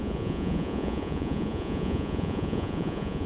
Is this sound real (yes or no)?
no